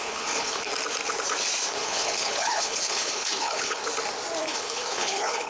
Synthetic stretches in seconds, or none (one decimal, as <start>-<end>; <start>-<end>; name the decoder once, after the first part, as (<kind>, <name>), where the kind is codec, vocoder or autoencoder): 0.0-0.7 (codec, HILCodec); 1.7-3.8; 4.4-5.5